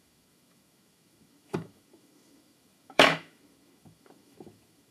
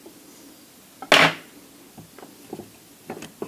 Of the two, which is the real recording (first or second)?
second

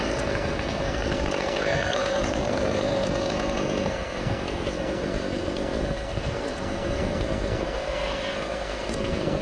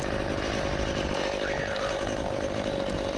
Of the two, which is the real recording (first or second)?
second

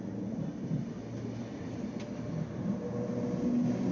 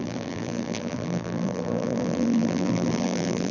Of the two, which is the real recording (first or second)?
first